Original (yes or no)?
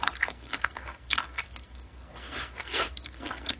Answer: no